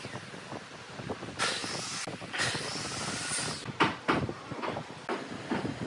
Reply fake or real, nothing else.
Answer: real